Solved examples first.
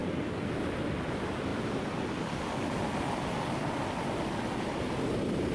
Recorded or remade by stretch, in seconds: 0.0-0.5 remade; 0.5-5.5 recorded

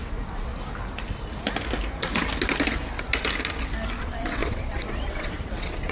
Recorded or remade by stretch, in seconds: 0.0-0.5 remade; 0.5-4.0 recorded; 4.0-5.9 remade

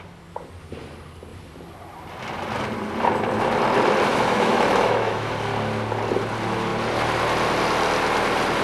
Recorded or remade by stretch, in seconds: 0.0-4.1 recorded; 4.1-5.3 remade; 5.3-8.6 recorded

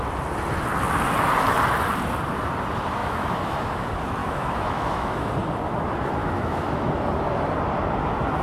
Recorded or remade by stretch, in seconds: 0.0-3.0 recorded; 3.0-3.6 remade; 3.6-4.2 recorded; 4.2-5.3 remade; 5.3-6.2 recorded; 6.2-6.9 remade; 6.9-8.4 recorded